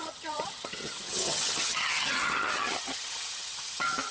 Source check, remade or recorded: remade